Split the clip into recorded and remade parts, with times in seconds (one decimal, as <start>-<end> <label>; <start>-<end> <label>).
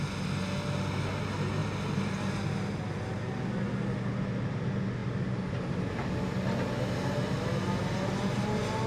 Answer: 0.0-8.9 recorded